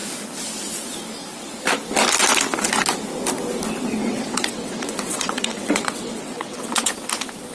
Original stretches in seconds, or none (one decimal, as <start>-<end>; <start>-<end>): 0.0-4.0; 6.9-7.5